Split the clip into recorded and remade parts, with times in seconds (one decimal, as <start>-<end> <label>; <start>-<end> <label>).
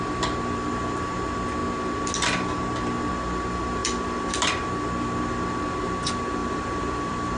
0.0-3.8 recorded; 3.8-4.5 remade; 4.5-6.4 recorded; 6.4-7.4 remade